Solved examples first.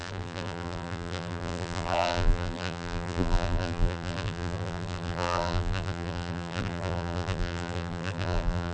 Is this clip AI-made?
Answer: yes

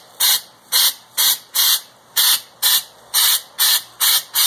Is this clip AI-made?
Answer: yes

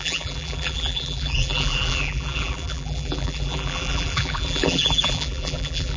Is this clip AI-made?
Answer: yes